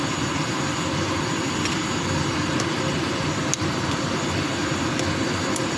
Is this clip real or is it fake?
real